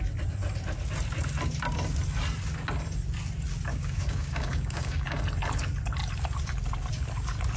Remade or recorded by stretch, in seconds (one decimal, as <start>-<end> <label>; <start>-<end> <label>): 0.0-3.7 recorded; 3.7-5.2 remade; 5.2-7.6 recorded